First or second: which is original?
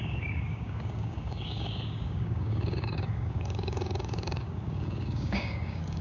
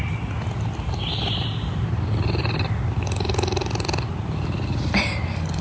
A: second